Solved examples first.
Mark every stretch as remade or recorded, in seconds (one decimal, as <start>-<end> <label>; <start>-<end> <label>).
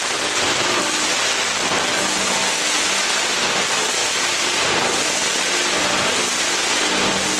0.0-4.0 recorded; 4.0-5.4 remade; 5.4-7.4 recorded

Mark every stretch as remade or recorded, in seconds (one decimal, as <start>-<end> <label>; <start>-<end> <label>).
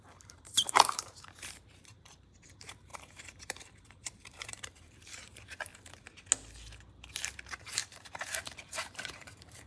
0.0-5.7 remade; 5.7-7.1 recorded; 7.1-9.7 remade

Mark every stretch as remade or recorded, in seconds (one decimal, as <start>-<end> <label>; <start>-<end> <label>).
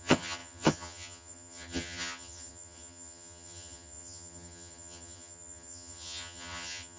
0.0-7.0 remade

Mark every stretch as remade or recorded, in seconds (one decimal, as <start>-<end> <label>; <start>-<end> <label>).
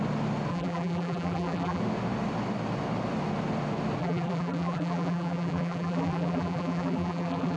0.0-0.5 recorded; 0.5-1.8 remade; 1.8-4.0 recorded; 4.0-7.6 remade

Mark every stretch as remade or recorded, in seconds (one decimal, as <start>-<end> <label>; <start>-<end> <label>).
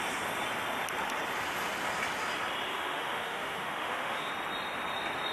0.0-2.7 recorded; 2.7-4.3 remade; 4.3-5.3 recorded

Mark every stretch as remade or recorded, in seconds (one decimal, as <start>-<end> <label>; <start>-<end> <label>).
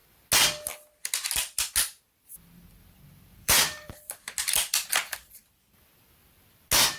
0.0-3.3 recorded; 3.3-4.1 remade; 4.1-7.0 recorded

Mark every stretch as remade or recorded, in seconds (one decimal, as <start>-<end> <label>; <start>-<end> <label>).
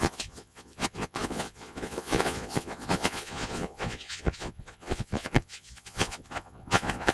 0.0-7.1 remade